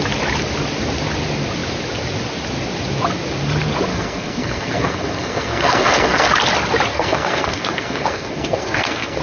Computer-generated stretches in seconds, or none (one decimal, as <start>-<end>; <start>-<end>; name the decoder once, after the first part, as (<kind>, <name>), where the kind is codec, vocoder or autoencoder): 3.9-6.3 (codec, SNAC); 6.9-9.2